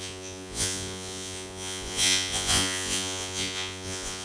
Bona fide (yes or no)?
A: no